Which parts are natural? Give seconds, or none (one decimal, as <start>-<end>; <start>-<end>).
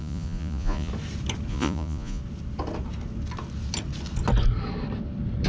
0.9-1.5; 2.2-5.5